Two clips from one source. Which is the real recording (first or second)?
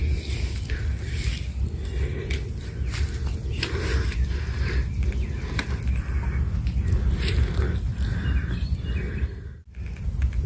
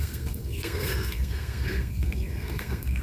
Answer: first